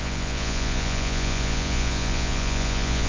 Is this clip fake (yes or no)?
yes